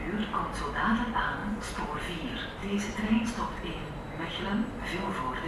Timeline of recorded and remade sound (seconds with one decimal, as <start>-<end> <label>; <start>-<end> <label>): 0.0-1.4 recorded; 1.4-2.0 remade; 2.0-2.6 recorded; 2.6-3.3 remade; 3.3-3.8 recorded; 3.8-4.4 remade; 4.4-5.5 recorded